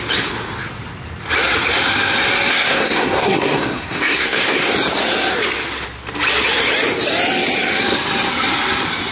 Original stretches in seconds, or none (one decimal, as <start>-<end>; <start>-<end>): 0.0-2.5; 4.7-9.1